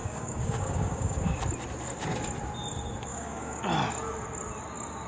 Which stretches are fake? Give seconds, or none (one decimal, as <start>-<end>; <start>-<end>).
0.0-1.4; 3.1-3.6